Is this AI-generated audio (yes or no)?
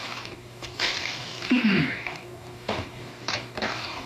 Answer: yes